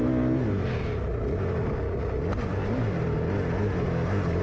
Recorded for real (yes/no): yes